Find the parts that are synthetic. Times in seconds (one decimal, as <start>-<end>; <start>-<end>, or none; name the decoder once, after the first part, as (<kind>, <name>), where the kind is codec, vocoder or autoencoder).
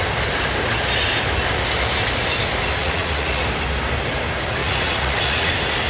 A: 2.8-3.4 (vocoder, Vocos); 4.6-5.5